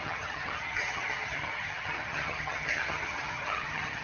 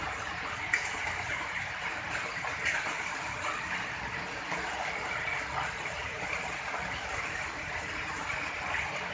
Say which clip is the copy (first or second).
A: first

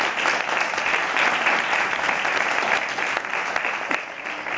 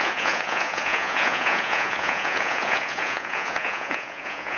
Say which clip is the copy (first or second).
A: second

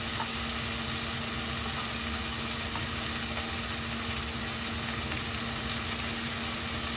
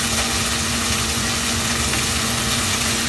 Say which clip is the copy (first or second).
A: second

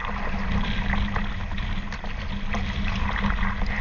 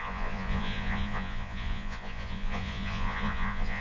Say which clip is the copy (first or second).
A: second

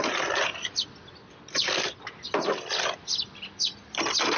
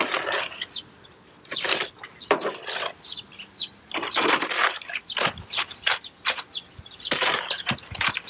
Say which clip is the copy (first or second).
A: second